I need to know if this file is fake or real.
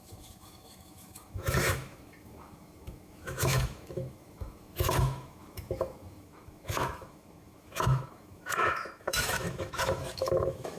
fake